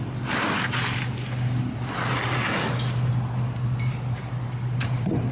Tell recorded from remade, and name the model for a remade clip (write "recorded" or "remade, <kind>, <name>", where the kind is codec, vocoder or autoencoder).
recorded